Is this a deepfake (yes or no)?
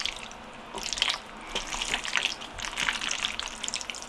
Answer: no